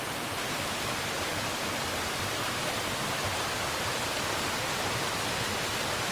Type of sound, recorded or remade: recorded